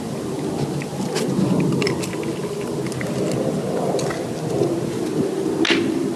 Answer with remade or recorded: recorded